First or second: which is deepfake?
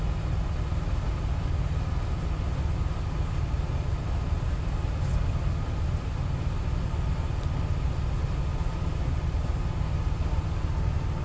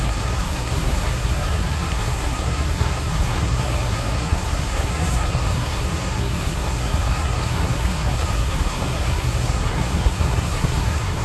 second